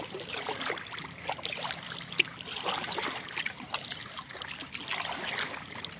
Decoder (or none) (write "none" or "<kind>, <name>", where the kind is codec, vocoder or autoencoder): none